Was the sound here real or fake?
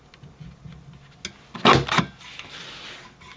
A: real